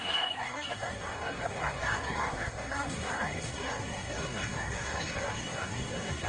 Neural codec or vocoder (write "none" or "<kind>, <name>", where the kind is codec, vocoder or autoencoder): codec, SNAC